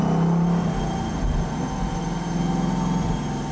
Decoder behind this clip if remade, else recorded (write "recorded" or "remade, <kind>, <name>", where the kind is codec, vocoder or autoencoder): recorded